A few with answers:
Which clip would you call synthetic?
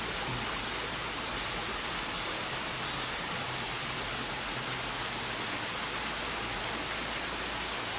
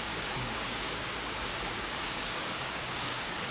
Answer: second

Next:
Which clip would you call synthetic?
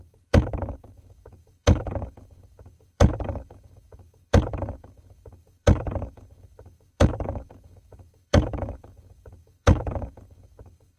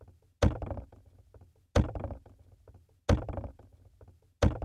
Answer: first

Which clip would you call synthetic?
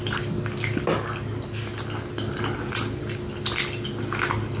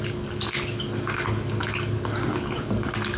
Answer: second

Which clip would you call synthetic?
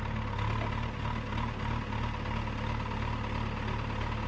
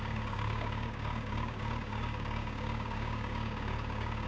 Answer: second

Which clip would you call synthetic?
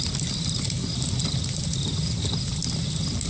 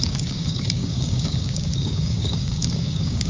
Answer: second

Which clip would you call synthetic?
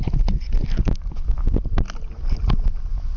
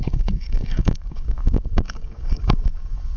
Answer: second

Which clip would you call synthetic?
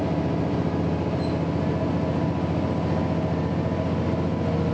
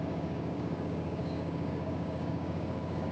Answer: second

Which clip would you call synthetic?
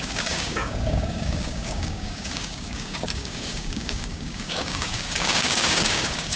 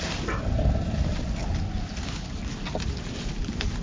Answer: first